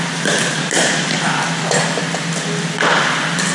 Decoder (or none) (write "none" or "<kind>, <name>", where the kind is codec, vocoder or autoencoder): none